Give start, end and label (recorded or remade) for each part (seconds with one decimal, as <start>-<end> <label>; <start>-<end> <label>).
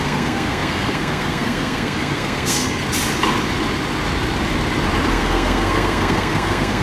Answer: 0.0-2.8 remade; 2.8-5.1 recorded; 5.1-6.8 remade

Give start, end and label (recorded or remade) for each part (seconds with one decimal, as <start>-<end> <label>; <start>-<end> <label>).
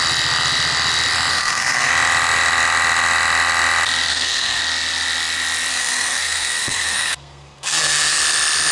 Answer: 0.0-1.3 recorded; 1.3-1.9 remade; 1.9-4.1 recorded; 4.1-4.6 remade; 4.6-5.7 recorded; 5.7-8.2 remade; 8.2-8.7 recorded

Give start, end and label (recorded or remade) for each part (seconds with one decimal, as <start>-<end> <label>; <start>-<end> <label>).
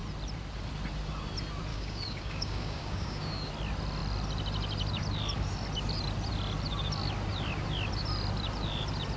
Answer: 0.0-1.7 recorded; 1.7-3.5 remade; 3.5-9.2 recorded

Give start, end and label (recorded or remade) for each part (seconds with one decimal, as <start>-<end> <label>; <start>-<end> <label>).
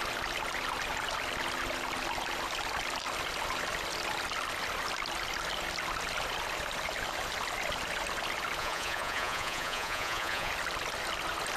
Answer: 0.0-8.6 recorded; 8.6-10.5 remade; 10.5-11.6 recorded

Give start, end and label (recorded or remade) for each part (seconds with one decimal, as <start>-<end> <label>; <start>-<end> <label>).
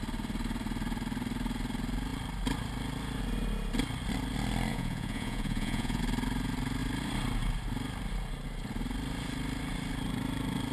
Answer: 0.0-4.7 recorded; 4.7-6.0 remade; 6.0-10.7 recorded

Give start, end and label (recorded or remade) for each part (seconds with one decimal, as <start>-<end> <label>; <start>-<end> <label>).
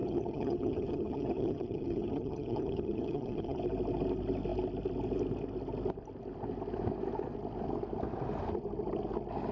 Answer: 0.0-3.6 remade; 3.6-9.5 recorded